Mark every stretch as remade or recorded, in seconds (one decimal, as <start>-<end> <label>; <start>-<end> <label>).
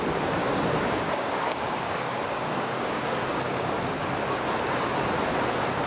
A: 0.0-0.4 recorded; 0.4-3.7 remade; 3.7-5.9 recorded